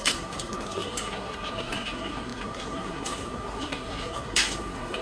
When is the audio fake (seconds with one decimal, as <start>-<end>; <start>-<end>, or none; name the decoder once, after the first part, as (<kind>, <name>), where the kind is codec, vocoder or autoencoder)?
0.0-5.0 (codec, SNAC)